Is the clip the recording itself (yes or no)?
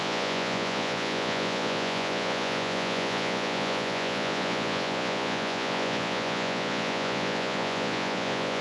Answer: no